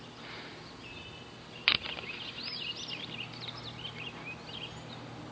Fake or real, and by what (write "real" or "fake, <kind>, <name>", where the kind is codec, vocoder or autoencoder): real